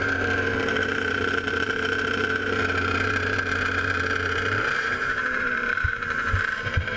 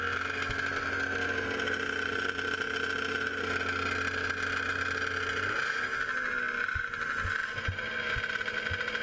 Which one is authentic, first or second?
second